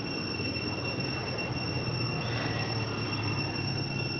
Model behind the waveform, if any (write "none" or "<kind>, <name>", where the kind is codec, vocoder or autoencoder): none